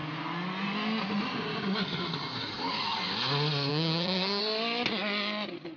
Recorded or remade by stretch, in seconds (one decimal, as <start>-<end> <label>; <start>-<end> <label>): 0.0-3.7 recorded; 3.7-4.4 remade; 4.4-5.8 recorded